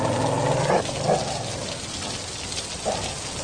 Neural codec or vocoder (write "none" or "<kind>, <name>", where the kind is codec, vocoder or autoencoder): none